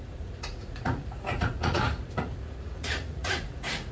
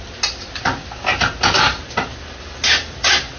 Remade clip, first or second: first